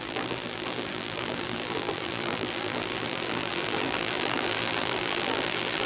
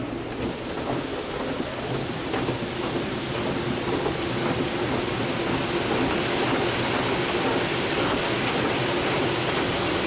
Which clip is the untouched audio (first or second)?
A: second